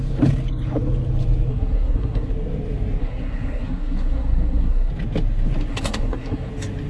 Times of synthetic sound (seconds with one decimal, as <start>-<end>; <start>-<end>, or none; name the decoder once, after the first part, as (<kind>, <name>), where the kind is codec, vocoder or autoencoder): 1.5-2.3 (codec, SNAC); 3.0-4.9; 5.7-6.5